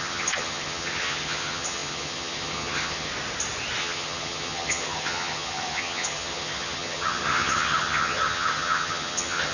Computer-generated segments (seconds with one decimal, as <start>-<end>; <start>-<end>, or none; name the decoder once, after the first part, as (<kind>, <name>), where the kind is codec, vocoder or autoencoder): 0.0-3.1 (vocoder, HiFi-GAN); 3.8-9.5